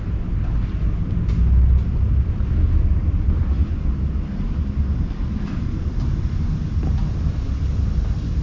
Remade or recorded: recorded